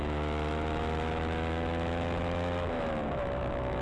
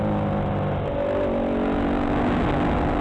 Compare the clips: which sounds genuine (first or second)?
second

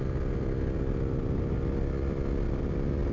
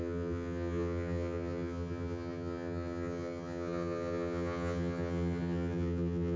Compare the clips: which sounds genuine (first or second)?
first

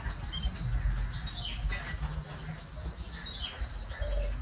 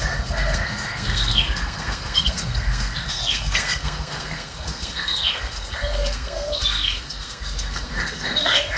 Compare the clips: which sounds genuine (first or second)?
first